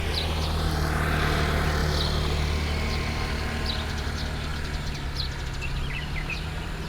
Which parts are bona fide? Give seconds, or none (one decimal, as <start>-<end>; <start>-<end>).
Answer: 0.0-6.9